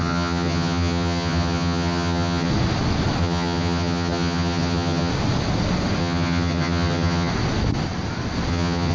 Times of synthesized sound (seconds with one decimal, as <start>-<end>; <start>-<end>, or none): 0.0-2.5; 3.2-5.1; 6.0-7.3; 8.5-8.9